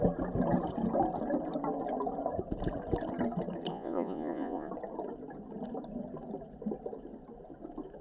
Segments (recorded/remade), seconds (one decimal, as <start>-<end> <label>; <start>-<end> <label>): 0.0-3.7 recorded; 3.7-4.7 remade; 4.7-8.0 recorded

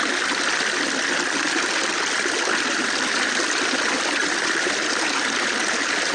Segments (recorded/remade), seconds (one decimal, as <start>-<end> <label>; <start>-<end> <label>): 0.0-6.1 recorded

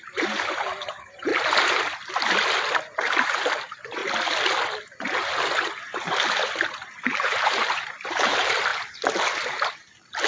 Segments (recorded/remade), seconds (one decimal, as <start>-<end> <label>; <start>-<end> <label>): 0.0-1.3 remade; 1.3-3.3 recorded; 3.3-4.0 remade; 4.0-6.0 recorded; 6.0-8.7 remade; 8.7-9.5 recorded; 9.5-10.3 remade

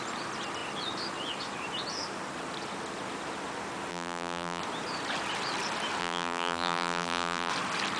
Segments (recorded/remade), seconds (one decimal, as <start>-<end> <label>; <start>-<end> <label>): 0.0-3.9 recorded; 3.9-4.6 remade; 4.6-6.0 recorded; 6.0-7.5 remade; 7.5-8.0 recorded

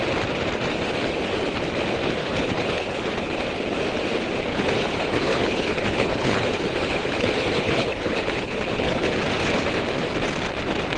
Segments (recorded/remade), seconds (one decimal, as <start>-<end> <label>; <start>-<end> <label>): 0.0-2.2 recorded; 2.2-3.3 remade; 3.3-4.5 recorded; 4.5-9.1 remade; 9.1-11.0 recorded

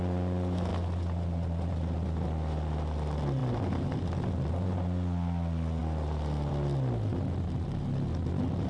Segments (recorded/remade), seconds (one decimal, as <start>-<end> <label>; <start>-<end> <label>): 0.0-8.7 recorded